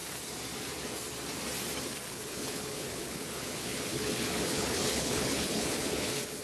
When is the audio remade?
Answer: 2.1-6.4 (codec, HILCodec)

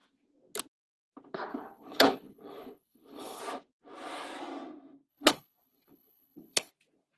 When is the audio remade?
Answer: 1.5-3.4 (codec, HILCodec); 5.1-6.7

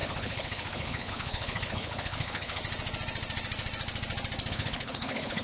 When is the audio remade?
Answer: 0.0-2.6 (codec, HILCodec); 4.5-5.4

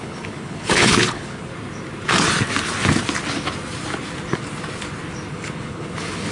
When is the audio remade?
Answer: 0.0-1.5 (codec, HILCodec); 5.3-6.3

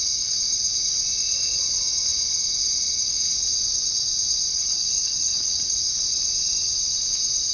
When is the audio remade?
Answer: 4.5-5.8 (codec, HILCodec)

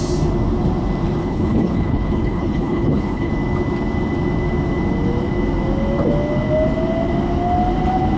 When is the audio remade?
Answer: 1.2-3.3 (codec, HILCodec)